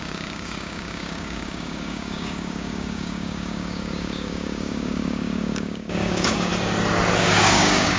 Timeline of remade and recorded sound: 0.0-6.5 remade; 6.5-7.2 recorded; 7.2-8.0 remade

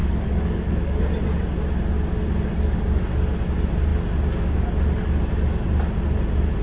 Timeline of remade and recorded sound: 0.0-1.0 remade; 1.0-2.5 recorded; 2.5-3.0 remade; 3.0-6.6 recorded

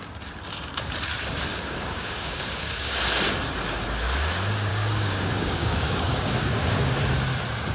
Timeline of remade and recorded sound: 0.0-1.5 recorded; 1.5-3.0 remade; 3.0-4.7 recorded; 4.7-7.0 remade; 7.0-7.7 recorded

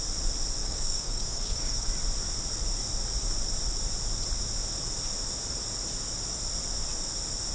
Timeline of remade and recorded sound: 0.0-0.6 recorded; 0.6-1.9 remade; 1.9-7.5 recorded